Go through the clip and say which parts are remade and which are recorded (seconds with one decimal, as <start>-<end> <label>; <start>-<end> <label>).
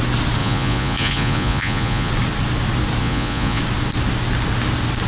0.0-0.4 recorded; 0.4-2.1 remade; 2.1-3.0 recorded; 3.0-3.6 remade; 3.6-5.1 recorded